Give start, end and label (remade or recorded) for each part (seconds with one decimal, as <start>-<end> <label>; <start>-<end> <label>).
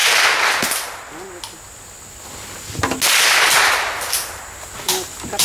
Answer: 0.0-5.4 recorded